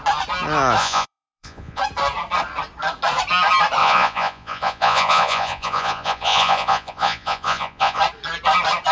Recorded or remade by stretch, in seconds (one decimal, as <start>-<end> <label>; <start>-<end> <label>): 0.0-0.8 recorded; 0.8-1.8 remade; 1.8-3.8 recorded; 3.8-8.0 remade; 8.0-8.9 recorded